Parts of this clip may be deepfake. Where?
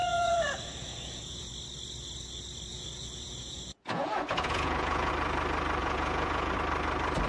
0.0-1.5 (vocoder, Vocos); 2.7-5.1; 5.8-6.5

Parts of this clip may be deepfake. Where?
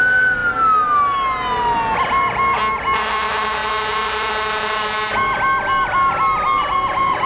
none